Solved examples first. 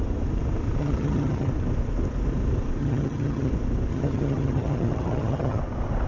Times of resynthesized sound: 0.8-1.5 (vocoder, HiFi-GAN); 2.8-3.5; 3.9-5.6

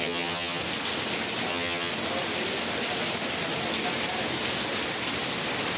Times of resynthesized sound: 0.0-0.6 (vocoder, HiFi-GAN); 1.5-1.9

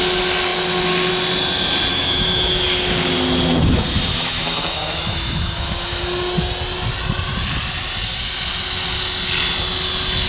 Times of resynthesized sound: 1.9-2.5 (autoencoder, DAC-VAE); 4.1-6.0

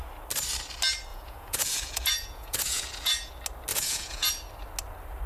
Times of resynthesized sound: 1.1-3.3 (vocoder, Vocos); 3.7-4.3

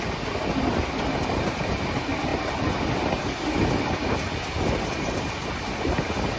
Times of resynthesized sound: none